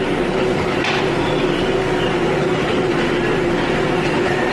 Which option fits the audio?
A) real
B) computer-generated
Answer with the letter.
A